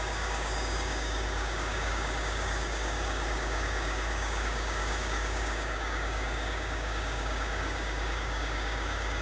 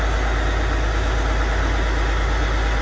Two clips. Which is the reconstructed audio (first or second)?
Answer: first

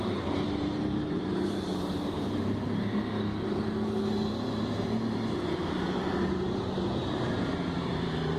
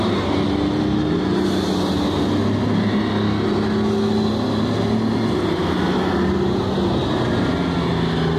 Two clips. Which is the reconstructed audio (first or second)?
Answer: first